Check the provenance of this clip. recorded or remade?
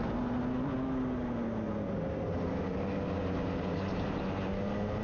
recorded